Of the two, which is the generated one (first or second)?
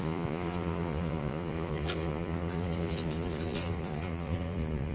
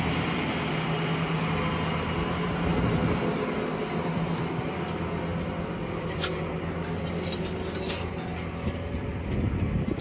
first